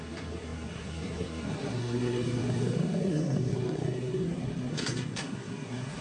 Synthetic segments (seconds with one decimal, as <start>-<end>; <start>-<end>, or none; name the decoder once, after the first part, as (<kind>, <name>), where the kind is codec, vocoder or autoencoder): 0.0-6.0 (codec, SNAC)